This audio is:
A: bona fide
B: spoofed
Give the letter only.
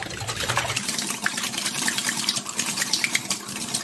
B